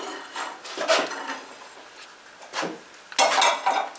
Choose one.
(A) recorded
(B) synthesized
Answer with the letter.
A